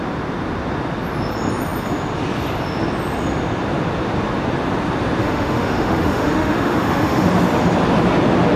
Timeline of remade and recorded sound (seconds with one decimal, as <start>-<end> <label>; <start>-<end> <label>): 0.0-5.2 recorded; 5.2-7.3 remade; 7.3-8.6 recorded